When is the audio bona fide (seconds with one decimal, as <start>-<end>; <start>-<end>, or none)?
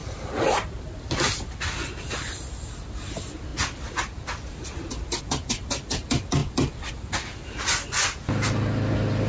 1.0-6.4; 6.9-9.3